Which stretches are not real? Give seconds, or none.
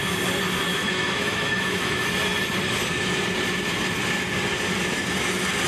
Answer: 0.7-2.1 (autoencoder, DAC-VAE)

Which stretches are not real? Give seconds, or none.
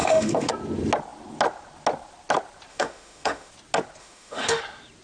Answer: 0.0-0.5 (autoencoder, DAC-VAE); 2.7-3.5; 4.0-4.6